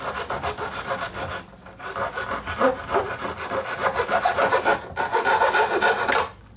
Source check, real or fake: real